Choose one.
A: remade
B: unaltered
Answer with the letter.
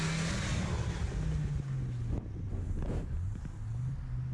B